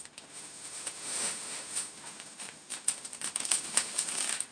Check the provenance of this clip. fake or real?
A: fake